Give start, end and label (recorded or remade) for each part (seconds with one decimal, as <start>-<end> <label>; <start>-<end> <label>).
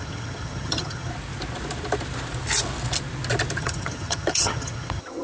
0.0-1.1 remade; 1.1-3.6 recorded; 3.6-5.2 remade